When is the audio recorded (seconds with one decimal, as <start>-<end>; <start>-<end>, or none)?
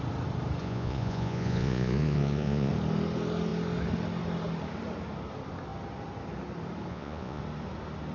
0.0-0.6; 2.7-6.9; 7.4-8.1